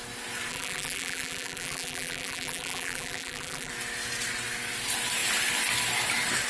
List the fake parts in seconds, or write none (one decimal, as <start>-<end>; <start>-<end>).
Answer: 0.5-3.7